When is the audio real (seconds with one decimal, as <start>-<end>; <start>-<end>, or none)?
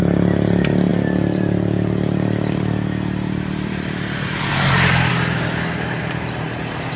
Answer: 0.0-0.9; 5.1-7.0